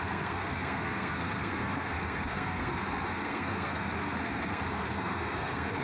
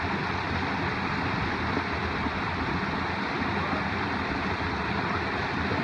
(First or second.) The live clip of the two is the second